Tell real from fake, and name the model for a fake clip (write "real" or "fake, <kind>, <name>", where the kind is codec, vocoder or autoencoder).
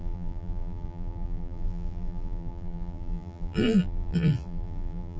fake, vocoder, BigVGAN v2